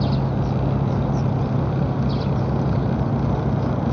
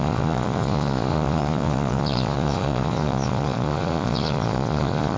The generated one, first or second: second